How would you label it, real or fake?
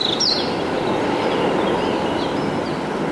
real